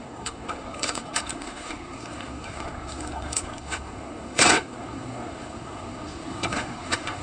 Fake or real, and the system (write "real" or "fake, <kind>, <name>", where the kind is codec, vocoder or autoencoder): fake, codec, SNAC